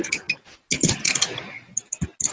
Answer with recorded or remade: recorded